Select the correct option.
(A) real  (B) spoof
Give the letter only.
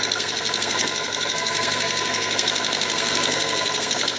B